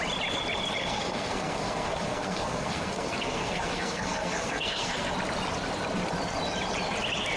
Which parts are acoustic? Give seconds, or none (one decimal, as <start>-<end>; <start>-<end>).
0.0-0.8; 5.1-7.4